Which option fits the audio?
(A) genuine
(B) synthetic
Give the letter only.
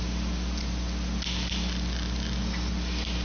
A